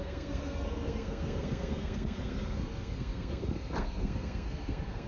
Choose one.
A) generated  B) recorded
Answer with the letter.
A